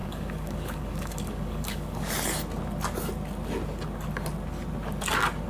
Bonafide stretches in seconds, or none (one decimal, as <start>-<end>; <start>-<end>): 2.1-5.5